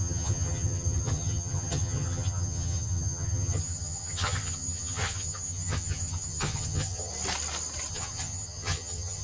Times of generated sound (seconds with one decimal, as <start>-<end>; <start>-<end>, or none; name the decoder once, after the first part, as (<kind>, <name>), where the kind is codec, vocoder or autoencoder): 0.0-7.1 (vocoder, HiFi-GAN); 7.9-9.2